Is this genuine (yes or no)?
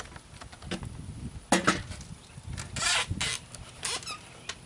yes